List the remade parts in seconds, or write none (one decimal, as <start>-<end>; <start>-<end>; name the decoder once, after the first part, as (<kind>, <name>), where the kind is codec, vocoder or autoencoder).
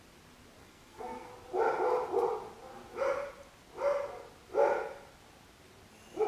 0.6-1.3 (codec, SNAC)